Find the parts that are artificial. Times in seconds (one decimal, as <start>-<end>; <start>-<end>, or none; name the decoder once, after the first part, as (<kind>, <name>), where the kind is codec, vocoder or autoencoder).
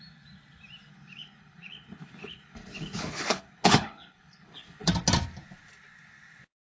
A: 0.9-4.9 (codec, HILCodec)